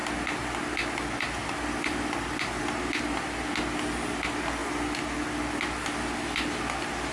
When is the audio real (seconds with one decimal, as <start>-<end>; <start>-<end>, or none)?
0.0-1.4; 2.6-7.1